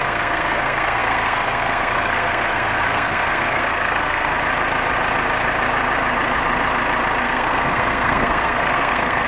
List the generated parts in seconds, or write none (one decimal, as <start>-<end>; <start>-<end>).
0.0-4.3; 7.2-9.3